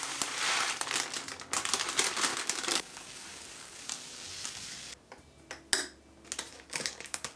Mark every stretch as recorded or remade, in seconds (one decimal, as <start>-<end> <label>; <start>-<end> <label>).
0.0-2.3 recorded; 2.3-5.1 remade; 5.1-6.5 recorded; 6.5-7.4 remade

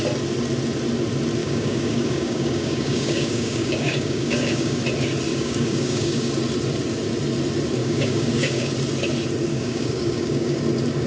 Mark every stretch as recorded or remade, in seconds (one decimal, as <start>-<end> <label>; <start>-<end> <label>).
0.0-1.4 recorded; 1.4-4.8 remade; 4.8-5.3 recorded; 5.3-6.3 remade; 6.3-7.8 recorded; 7.8-8.7 remade; 8.7-9.5 recorded; 9.5-10.6 remade; 10.6-11.1 recorded

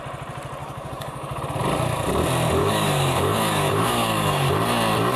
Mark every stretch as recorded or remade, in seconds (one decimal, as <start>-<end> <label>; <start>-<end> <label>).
0.0-0.6 recorded; 0.6-1.4 remade; 1.4-2.6 recorded; 2.6-4.5 remade; 4.5-5.2 recorded

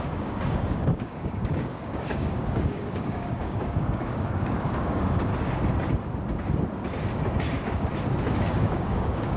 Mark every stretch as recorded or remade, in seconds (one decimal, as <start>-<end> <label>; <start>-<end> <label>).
0.0-5.3 remade; 5.3-7.5 recorded; 7.5-7.9 remade; 7.9-8.4 recorded; 8.4-9.4 remade

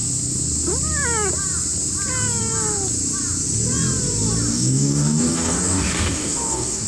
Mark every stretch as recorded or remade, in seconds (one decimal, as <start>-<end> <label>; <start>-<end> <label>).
0.0-4.5 recorded; 4.5-6.9 remade

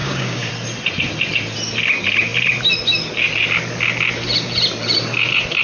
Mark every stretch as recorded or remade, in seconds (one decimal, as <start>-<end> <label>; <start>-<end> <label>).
0.0-0.5 remade; 0.5-5.6 recorded

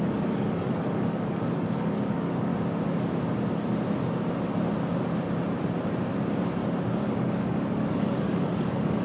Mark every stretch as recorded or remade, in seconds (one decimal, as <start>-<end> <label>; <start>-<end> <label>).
0.0-2.5 remade; 2.5-6.9 recorded; 6.9-9.0 remade